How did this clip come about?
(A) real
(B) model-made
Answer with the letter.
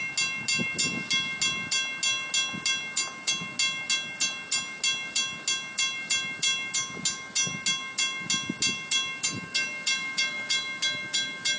A